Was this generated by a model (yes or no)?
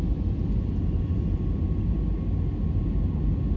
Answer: no